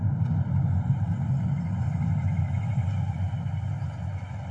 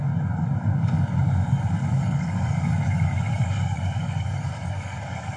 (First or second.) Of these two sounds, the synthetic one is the second